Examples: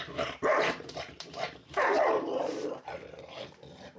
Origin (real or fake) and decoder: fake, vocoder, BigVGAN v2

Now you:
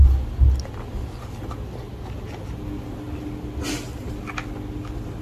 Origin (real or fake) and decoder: real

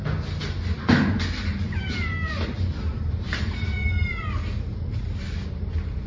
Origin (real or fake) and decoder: fake, vocoder, BigVGAN v2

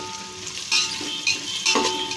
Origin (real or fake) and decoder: real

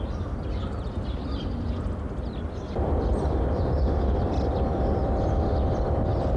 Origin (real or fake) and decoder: fake, vocoder, BigVGAN v2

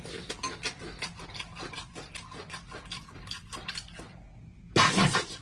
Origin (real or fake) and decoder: fake, vocoder, BigVGAN v2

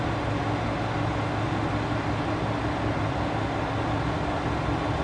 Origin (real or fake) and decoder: real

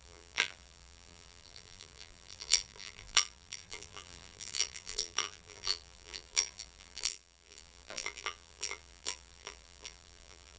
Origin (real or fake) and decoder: fake, vocoder, BigVGAN v2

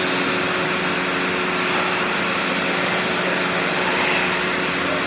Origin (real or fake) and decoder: real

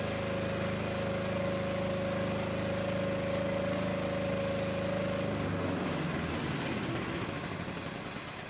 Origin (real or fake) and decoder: real